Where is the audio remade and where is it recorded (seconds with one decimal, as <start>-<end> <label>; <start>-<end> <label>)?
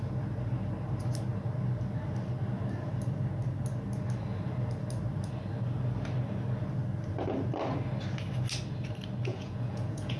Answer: 0.0-9.3 recorded; 9.3-10.2 remade